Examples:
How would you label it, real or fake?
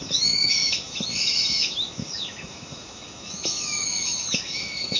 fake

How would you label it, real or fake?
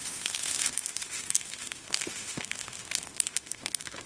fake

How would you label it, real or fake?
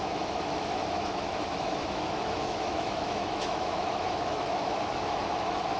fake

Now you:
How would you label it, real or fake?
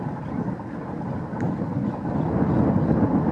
real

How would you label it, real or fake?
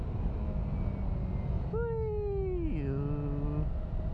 real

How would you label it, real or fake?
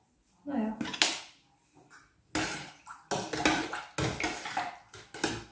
real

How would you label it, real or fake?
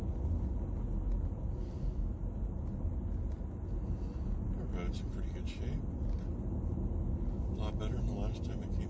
real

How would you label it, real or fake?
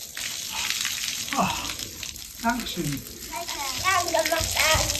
real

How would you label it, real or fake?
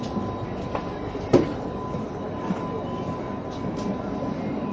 real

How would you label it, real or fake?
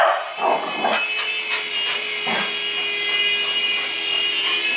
real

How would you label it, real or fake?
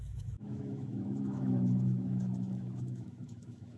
fake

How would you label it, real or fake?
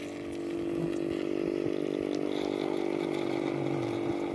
real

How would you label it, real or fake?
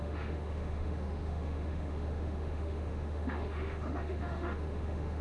fake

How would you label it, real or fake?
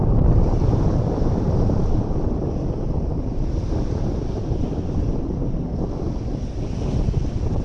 real